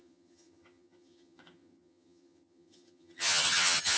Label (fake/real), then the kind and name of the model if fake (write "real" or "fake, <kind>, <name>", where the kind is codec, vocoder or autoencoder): fake, vocoder, HiFi-GAN